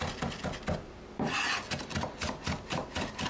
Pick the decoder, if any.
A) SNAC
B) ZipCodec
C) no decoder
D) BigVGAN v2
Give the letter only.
C